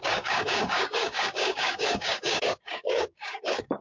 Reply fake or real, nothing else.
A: fake